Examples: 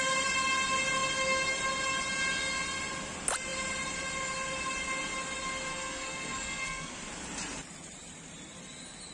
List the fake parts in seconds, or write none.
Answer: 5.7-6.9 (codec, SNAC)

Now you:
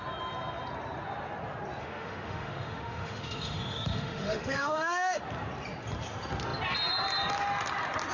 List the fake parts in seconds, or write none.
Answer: 1.8-5.2 (autoencoder, DAC-VAE)

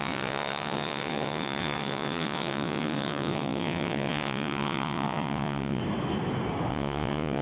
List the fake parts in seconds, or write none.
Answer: 0.0-5.8 (vocoder, WaveNeXt); 6.7-7.4

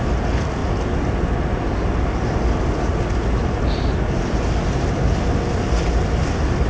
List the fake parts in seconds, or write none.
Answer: none